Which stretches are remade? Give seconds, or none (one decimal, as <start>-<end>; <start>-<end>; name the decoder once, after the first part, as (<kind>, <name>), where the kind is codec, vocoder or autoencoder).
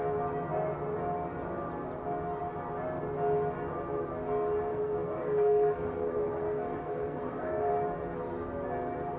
4.7-7.7 (codec, SNAC)